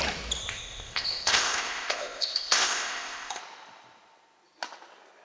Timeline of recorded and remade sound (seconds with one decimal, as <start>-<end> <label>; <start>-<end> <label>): 0.0-0.4 recorded; 0.4-3.4 remade; 3.4-5.2 recorded